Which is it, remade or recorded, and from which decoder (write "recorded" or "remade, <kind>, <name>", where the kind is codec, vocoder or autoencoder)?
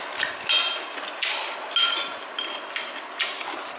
recorded